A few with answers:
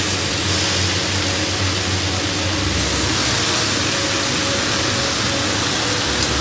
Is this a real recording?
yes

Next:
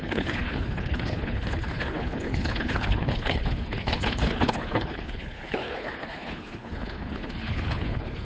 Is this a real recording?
no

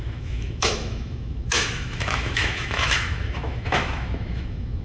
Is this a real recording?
no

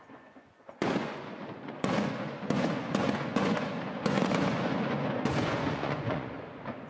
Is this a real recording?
no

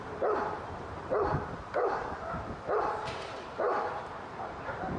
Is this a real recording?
no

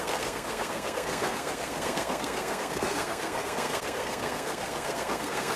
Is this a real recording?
no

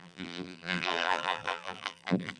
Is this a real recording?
no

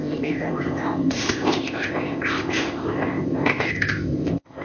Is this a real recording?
no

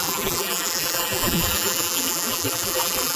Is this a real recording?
no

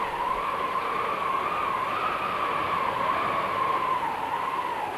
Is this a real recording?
yes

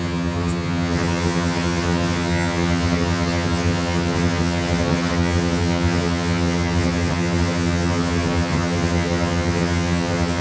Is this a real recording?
no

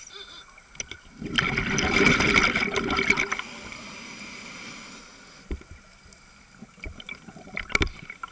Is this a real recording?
yes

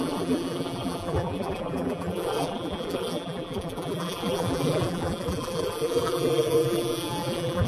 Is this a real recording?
no